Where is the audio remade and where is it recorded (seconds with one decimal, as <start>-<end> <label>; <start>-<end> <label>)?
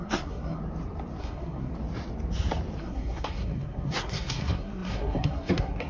0.0-0.6 remade; 0.6-1.2 recorded; 1.2-1.7 remade; 1.7-2.8 recorded; 2.8-5.9 remade